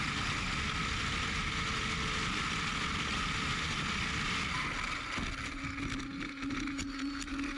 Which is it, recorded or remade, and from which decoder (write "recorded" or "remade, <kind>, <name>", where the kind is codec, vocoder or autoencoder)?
recorded